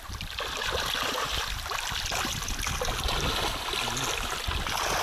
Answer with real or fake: real